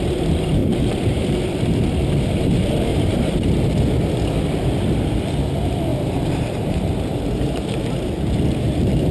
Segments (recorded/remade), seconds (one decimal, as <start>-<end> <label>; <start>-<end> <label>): 0.0-0.6 recorded; 0.6-1.8 remade; 1.8-2.9 recorded; 2.9-3.5 remade; 3.5-5.9 recorded; 5.9-7.8 remade; 7.8-9.1 recorded